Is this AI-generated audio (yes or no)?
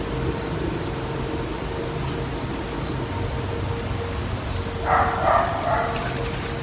no